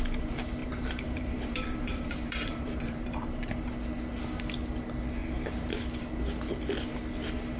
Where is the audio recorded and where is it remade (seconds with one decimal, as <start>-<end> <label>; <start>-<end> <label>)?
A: 0.0-0.6 recorded; 0.6-3.7 remade; 3.7-5.2 recorded; 5.2-5.7 remade; 5.7-7.6 recorded

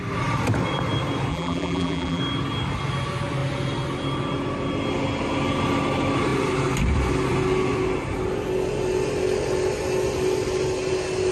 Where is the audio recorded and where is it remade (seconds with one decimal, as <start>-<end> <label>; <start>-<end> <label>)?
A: 0.0-1.3 recorded; 1.3-2.2 remade; 2.2-11.3 recorded

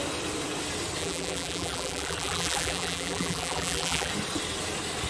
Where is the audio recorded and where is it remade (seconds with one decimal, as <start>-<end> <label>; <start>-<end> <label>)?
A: 0.0-1.0 recorded; 1.0-4.1 remade; 4.1-5.1 recorded